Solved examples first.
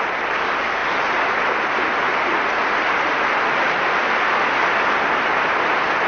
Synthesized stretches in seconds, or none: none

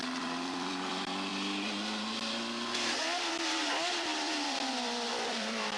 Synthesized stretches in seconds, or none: 0.0-1.3; 3.3-5.8

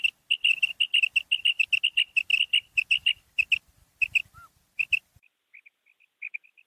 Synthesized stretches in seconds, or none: none

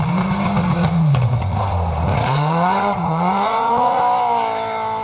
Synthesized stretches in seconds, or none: 0.6-1.6; 2.1-4.0

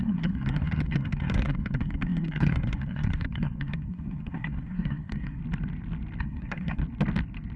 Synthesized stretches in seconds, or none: 0.0-5.4; 6.2-6.8